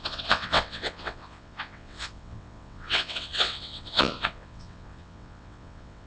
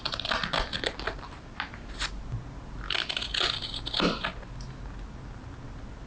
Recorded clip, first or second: second